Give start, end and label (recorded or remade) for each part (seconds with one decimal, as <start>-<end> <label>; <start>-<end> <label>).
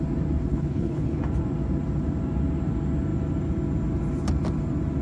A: 0.0-0.5 recorded; 0.5-1.2 remade; 1.2-5.0 recorded